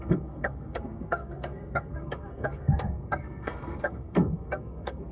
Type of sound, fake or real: fake